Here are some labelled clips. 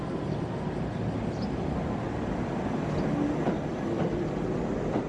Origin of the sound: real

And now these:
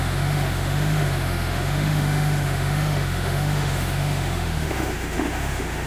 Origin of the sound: fake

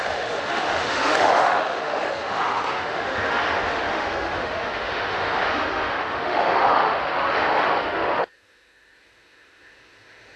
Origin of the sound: fake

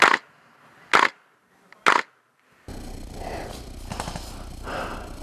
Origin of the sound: real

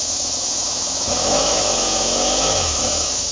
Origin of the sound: fake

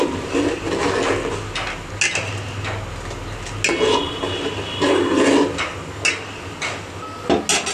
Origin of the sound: real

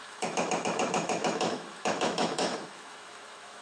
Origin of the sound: fake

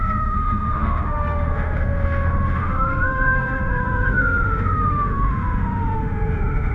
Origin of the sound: fake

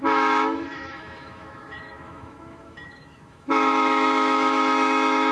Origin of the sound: fake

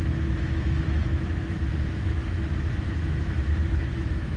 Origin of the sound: fake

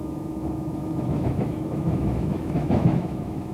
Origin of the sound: fake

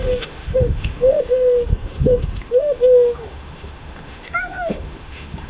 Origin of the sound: fake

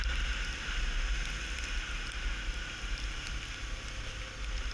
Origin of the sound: real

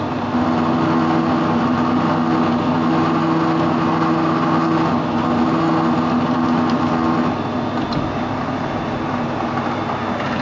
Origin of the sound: real